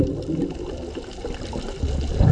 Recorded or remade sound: recorded